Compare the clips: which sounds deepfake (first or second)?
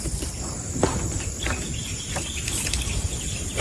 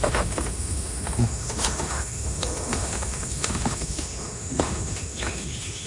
second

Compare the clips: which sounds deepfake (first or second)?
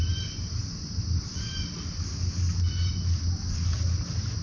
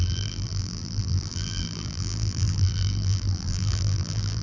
second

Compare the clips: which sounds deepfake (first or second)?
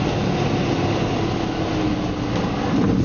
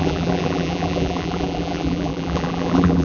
second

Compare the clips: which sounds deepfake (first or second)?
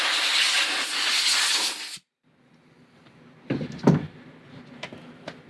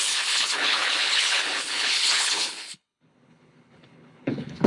second